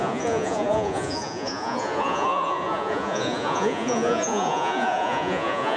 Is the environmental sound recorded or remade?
remade